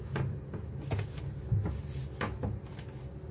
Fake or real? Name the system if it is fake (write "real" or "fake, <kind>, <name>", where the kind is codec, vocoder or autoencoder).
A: real